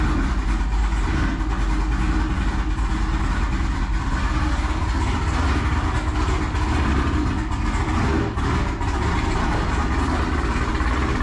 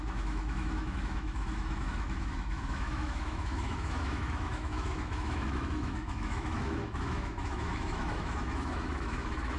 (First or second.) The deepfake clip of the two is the second